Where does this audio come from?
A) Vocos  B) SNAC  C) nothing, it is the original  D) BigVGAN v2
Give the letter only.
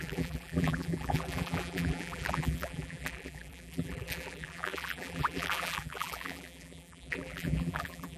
D